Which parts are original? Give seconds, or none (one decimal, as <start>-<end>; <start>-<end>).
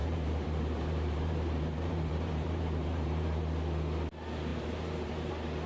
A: 3.4-4.5; 5.3-5.7